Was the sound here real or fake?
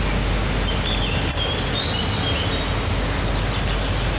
real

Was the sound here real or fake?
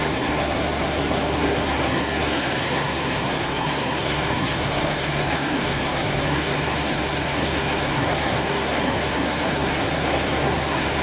fake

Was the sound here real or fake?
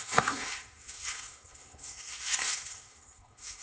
fake